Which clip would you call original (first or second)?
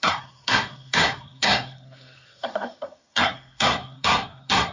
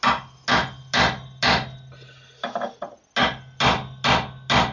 second